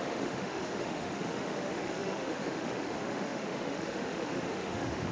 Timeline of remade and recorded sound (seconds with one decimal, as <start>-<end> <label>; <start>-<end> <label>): 0.0-5.1 remade

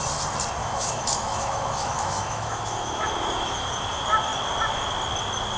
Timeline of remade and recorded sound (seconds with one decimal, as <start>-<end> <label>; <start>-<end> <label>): 0.0-0.6 recorded; 0.6-3.7 remade; 3.7-5.6 recorded

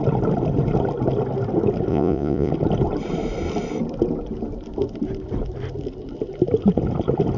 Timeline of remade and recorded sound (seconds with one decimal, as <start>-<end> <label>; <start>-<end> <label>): 0.0-1.9 recorded; 1.9-2.5 remade; 2.5-7.4 recorded